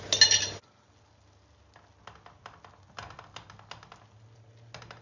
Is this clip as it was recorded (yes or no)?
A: yes